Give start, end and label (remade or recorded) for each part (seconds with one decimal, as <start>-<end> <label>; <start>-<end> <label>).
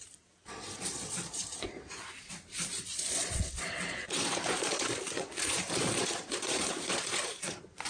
0.0-7.9 remade